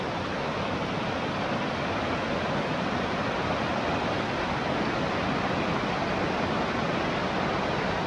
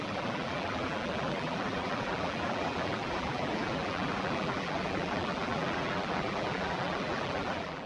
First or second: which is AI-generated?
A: second